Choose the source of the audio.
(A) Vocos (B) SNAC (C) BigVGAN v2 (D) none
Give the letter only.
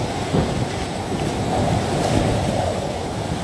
D